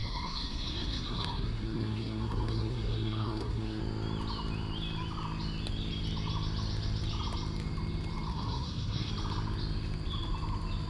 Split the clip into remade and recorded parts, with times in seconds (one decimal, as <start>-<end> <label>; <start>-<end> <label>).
0.0-3.8 remade; 3.8-8.3 recorded; 8.3-9.1 remade; 9.1-10.9 recorded